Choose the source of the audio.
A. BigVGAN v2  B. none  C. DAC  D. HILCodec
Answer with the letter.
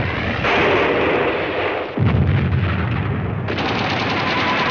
B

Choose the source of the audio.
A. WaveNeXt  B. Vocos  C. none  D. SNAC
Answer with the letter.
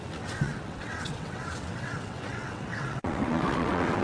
A